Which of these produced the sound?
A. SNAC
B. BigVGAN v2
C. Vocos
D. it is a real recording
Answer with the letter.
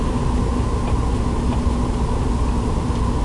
D